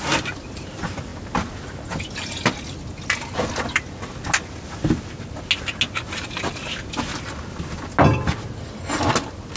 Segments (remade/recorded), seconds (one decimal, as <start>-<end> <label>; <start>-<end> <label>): 0.0-9.6 recorded